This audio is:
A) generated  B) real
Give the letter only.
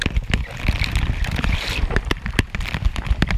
B